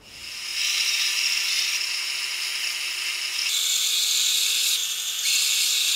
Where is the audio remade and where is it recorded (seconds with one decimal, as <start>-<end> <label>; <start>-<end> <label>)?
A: 0.0-6.0 recorded